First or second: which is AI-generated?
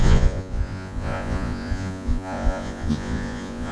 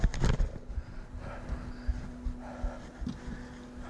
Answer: first